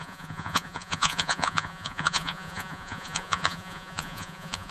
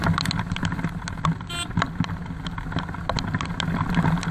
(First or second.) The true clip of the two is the second